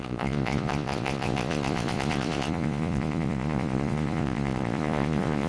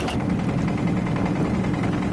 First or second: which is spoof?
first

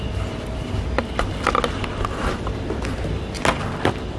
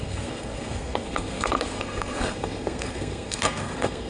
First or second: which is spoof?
second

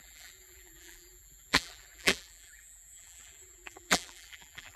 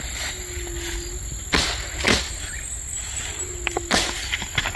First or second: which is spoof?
first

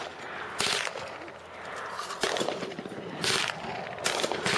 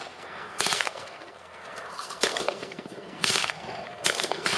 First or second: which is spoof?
second